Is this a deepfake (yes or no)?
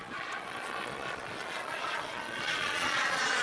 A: yes